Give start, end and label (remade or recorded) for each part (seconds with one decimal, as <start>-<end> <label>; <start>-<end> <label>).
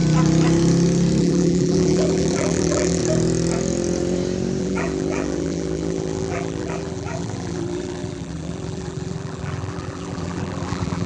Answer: 0.0-1.2 recorded; 1.2-3.0 remade; 3.0-4.6 recorded; 4.6-11.1 remade